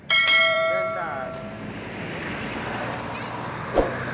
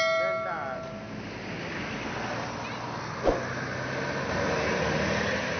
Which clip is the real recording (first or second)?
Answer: second